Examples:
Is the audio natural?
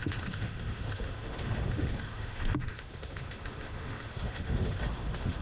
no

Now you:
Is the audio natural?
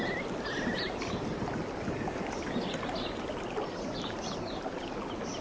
yes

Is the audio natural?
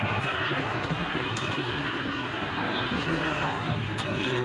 no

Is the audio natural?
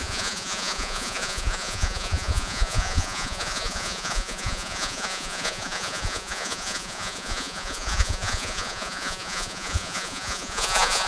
no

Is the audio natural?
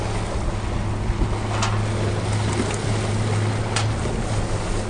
yes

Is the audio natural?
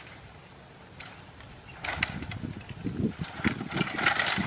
yes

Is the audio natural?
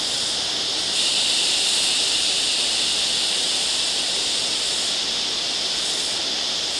yes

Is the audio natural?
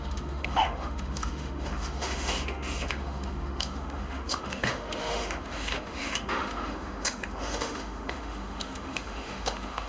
no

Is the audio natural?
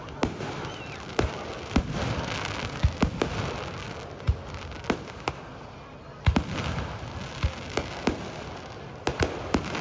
yes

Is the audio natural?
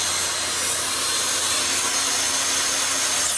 yes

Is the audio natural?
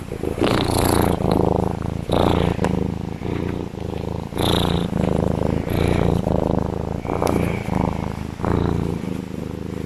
yes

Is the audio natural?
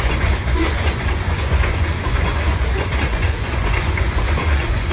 no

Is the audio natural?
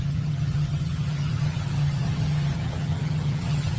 no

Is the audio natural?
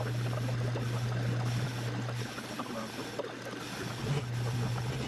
yes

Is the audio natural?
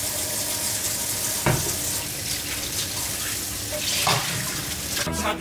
yes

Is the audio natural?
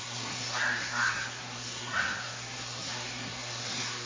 no